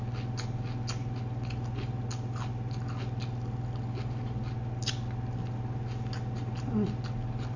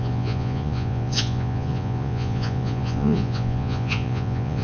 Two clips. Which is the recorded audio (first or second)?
first